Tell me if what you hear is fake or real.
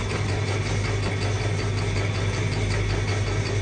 real